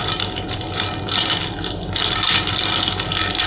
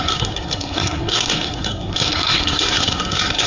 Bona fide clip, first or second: first